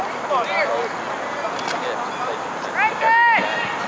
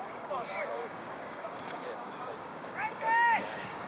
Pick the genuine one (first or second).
first